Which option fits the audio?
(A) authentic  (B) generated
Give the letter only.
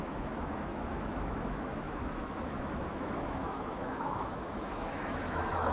B